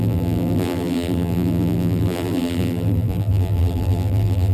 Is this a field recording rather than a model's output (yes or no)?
no